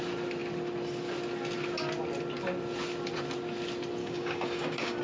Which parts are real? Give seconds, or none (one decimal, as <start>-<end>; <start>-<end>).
0.0-4.0